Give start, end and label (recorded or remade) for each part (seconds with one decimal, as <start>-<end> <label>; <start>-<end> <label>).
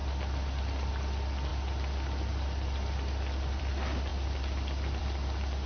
0.0-5.7 recorded